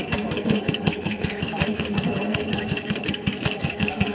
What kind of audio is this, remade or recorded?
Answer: remade